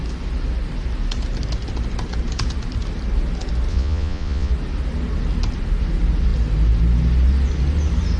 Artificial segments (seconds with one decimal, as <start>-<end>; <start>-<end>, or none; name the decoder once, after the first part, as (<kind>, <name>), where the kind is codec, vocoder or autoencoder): 3.7-4.5 (vocoder, Vocos)